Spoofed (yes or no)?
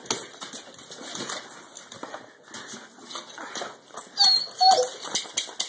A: no